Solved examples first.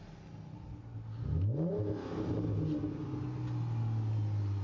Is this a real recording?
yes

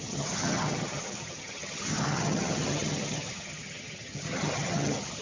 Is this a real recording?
no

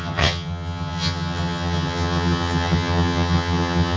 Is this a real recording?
no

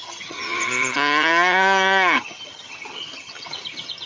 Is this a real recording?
no